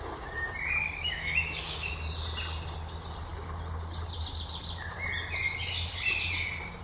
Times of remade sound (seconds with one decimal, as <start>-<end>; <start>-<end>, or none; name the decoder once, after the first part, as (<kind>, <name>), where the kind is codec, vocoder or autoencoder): 0.8-1.9 (codec, DAC)